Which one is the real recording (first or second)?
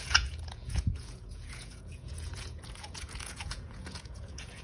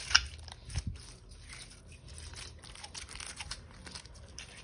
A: second